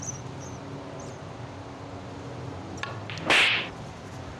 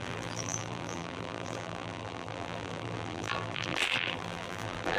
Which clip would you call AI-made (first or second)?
second